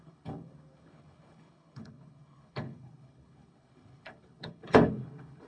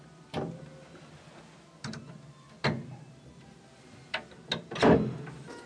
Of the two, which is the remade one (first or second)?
first